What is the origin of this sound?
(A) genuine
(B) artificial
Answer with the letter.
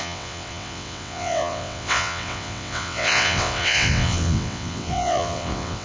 B